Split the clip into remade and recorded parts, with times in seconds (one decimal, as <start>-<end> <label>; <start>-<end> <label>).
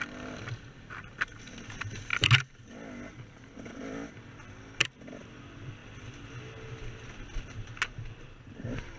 0.0-9.0 recorded